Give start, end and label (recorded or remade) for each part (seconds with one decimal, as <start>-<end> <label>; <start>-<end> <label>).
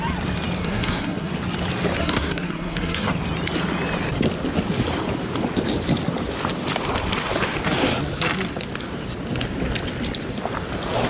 0.0-0.6 recorded; 0.6-1.3 remade; 1.3-2.0 recorded; 2.0-3.1 remade; 3.1-11.1 recorded